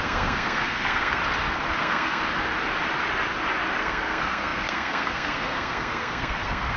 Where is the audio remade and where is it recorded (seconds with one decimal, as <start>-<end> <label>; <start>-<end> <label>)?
0.0-1.2 remade; 1.2-1.8 recorded; 1.8-2.2 remade; 2.2-3.8 recorded; 3.8-6.8 remade